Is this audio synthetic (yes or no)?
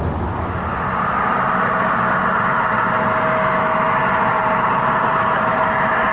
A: no